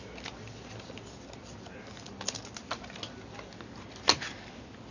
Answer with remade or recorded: recorded